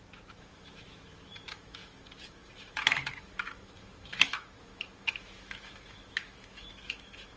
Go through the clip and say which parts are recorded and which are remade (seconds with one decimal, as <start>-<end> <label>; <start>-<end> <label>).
0.0-7.4 remade